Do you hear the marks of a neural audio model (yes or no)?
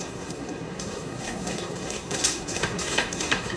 yes